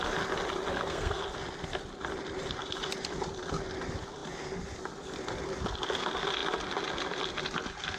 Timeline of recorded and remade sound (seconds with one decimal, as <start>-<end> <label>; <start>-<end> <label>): 0.0-0.7 recorded; 0.7-1.2 remade; 1.2-8.0 recorded